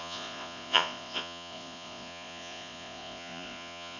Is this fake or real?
fake